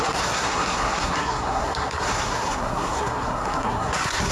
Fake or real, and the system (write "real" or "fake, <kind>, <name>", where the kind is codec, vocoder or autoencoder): fake, codec, SNAC